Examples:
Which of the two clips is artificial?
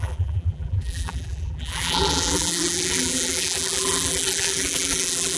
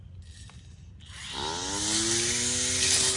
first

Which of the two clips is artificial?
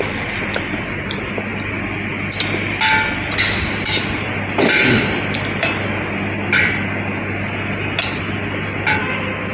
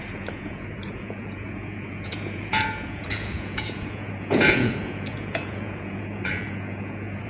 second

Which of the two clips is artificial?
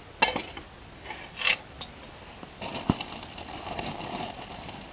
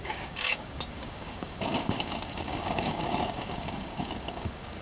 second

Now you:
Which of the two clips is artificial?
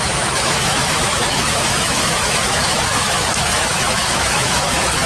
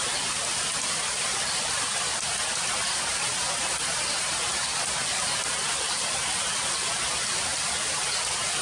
first